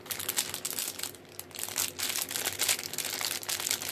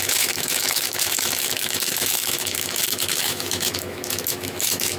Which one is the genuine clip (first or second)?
first